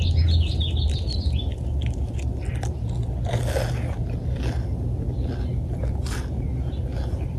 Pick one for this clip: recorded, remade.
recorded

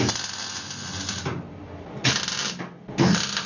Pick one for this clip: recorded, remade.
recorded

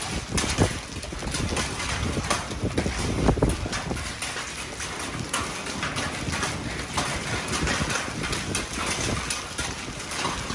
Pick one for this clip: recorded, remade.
recorded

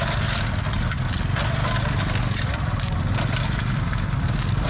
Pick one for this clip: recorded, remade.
recorded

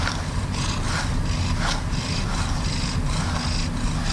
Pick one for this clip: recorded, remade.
recorded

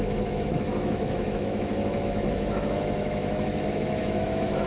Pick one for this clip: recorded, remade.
remade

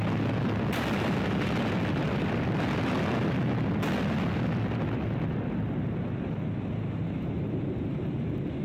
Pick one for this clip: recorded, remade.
recorded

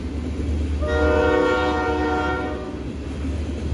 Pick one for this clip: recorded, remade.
recorded